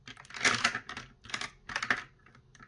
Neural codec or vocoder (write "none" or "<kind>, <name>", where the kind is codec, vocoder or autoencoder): none